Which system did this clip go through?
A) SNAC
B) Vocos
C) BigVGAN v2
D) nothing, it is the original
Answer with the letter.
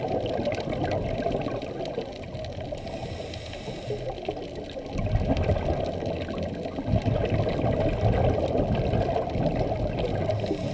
D